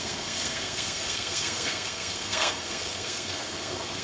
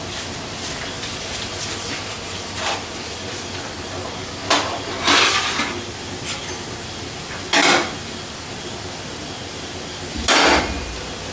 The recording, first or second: second